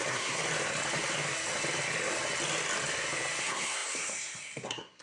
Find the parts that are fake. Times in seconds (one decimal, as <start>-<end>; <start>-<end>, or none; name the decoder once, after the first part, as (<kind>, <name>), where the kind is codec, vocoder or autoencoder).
0.0-0.4 (codec, SNAC); 3.4-5.0